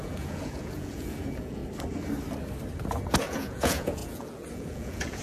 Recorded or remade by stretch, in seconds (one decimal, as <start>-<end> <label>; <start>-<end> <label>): 0.0-1.6 remade; 1.6-3.2 recorded; 3.2-5.2 remade